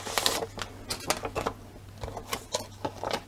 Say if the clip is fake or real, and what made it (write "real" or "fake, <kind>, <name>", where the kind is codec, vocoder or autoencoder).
real